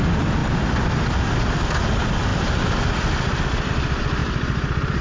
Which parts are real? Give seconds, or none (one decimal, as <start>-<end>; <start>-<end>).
0.0-0.4; 1.4-4.2